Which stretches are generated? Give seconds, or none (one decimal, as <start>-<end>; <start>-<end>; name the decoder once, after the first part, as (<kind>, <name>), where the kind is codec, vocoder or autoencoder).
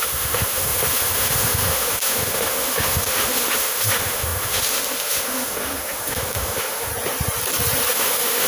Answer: 0.0-6.9 (autoencoder, DAC-VAE); 7.9-8.5